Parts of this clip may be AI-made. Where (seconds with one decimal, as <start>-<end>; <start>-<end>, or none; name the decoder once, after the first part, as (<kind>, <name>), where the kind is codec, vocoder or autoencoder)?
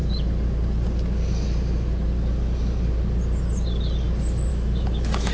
4.5-5.3 (autoencoder, DAC-VAE)